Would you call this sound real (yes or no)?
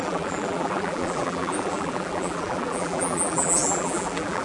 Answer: no